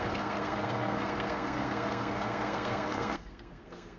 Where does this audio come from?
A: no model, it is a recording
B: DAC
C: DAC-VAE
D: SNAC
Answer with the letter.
D